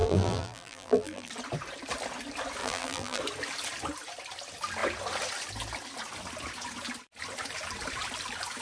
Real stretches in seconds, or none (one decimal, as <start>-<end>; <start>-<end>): 1.3-2.6; 3.2-8.6